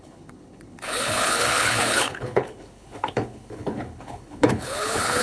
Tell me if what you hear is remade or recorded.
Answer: remade